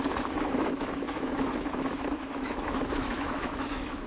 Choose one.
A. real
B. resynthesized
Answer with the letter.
B